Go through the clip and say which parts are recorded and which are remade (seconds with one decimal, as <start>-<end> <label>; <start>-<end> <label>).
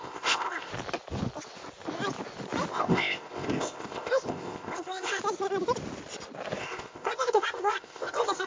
0.0-0.7 remade; 0.7-2.7 recorded; 2.7-5.2 remade; 5.2-6.6 recorded; 6.6-8.5 remade